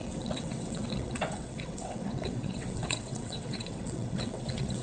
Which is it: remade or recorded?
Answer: remade